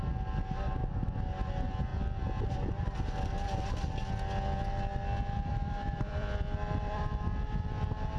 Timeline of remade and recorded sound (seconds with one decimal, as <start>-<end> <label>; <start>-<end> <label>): 0.0-5.5 recorded; 5.5-7.0 remade; 7.0-8.2 recorded